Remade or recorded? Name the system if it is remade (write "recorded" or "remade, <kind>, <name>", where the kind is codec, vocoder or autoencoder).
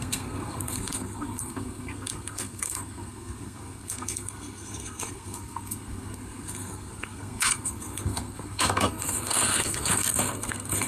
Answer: remade, codec, SNAC